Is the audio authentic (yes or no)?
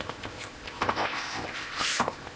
no